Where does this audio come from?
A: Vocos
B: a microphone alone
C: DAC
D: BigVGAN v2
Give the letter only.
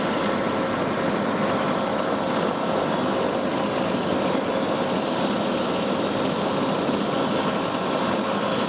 B